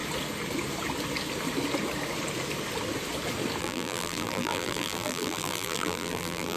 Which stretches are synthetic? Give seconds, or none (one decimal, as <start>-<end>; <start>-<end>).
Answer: 3.6-6.6